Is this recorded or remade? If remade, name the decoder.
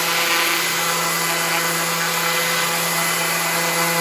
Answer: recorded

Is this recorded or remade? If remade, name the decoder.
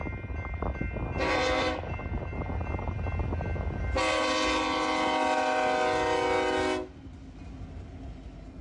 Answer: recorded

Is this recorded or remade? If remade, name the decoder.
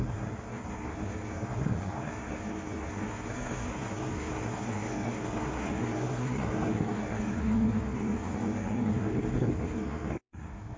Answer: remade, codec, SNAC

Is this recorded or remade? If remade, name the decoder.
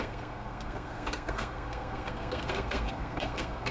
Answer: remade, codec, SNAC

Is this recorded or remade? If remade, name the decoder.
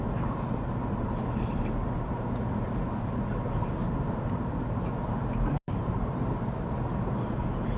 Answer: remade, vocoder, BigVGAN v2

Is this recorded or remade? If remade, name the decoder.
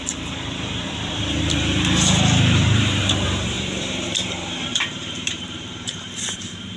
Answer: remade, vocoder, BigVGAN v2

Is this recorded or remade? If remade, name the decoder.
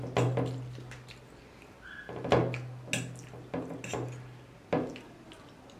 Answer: recorded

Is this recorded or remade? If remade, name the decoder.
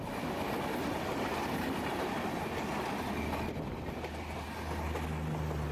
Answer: recorded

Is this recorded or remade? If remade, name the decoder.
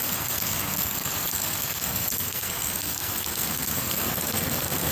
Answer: remade, codec, SNAC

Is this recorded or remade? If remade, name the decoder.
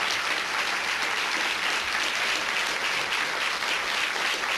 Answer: recorded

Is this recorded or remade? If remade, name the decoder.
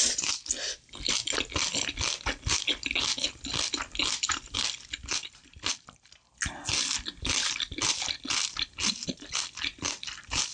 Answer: recorded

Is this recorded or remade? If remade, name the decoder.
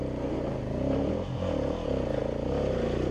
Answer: recorded